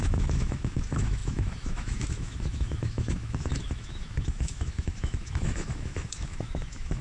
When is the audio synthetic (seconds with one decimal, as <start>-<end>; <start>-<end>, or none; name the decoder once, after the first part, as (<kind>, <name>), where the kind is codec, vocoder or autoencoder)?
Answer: 0.0-7.0 (autoencoder, DAC-VAE)